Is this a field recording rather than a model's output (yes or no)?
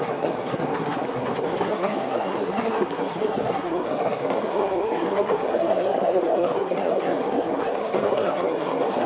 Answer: no